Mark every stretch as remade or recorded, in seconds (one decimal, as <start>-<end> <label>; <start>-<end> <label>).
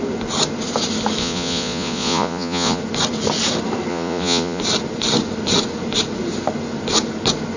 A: 0.0-1.2 recorded; 1.2-2.8 remade; 2.8-3.9 recorded; 3.9-4.6 remade; 4.6-7.6 recorded